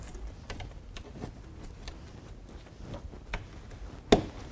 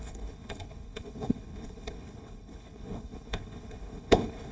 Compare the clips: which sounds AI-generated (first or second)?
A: second